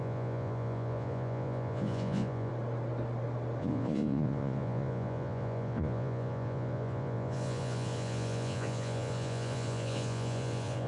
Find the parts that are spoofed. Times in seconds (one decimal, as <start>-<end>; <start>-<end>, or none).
0.0-2.5; 3.6-10.9

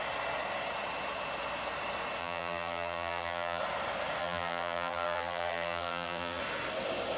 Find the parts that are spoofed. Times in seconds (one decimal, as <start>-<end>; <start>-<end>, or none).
2.2-3.6; 4.2-6.4